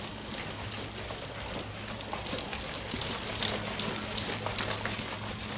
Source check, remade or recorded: recorded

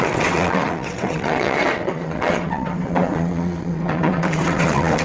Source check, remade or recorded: remade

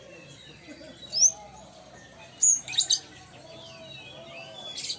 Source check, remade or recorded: recorded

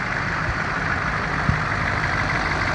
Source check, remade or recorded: recorded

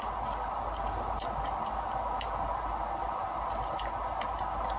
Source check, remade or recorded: recorded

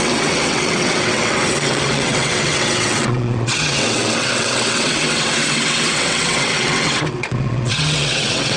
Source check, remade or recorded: remade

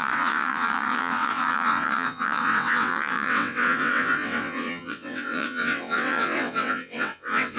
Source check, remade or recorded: remade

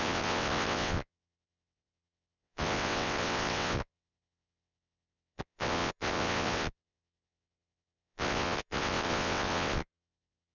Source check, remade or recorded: remade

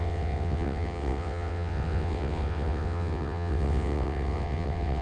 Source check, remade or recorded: remade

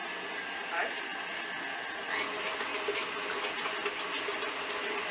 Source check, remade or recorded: recorded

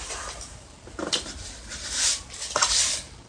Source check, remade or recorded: recorded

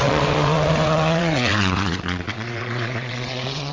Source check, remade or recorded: remade